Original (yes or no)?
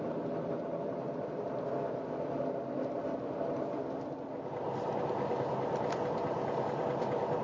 yes